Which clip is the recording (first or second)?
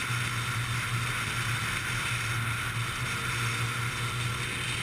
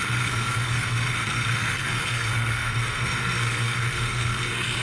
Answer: first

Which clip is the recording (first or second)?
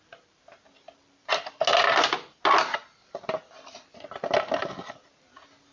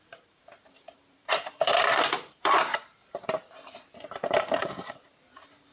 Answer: first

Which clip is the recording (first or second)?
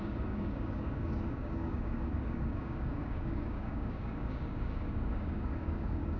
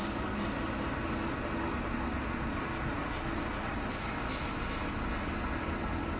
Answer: second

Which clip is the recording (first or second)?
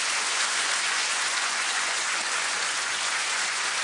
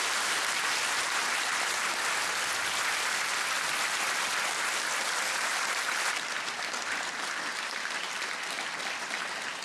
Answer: second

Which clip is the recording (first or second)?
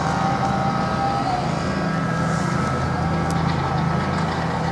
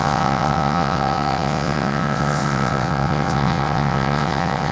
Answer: first